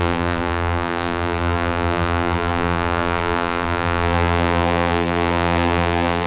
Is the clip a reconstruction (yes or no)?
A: yes